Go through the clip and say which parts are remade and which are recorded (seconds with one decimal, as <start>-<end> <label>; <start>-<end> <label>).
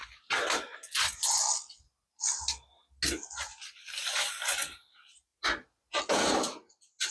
0.0-7.1 recorded